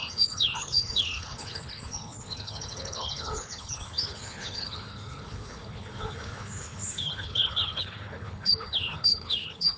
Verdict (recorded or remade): remade